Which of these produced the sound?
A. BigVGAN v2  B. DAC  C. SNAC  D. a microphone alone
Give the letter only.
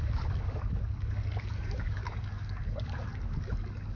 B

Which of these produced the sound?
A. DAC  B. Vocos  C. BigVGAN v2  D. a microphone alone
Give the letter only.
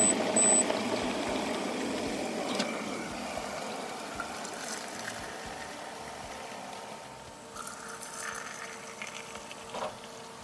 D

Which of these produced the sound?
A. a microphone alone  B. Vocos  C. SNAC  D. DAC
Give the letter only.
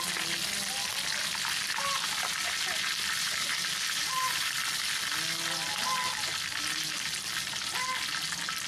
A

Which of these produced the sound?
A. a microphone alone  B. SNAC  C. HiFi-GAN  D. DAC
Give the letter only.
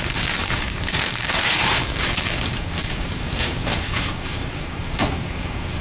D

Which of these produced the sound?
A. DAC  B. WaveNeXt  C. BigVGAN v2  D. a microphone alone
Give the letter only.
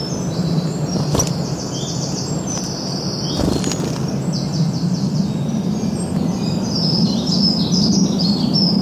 D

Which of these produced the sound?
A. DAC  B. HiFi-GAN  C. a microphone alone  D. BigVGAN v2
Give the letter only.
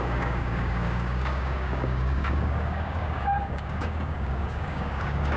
A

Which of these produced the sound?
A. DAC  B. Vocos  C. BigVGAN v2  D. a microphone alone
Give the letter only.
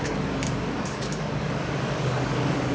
A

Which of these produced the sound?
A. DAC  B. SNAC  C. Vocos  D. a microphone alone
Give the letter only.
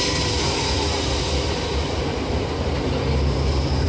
D